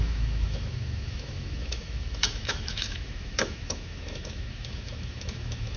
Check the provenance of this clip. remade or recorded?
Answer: remade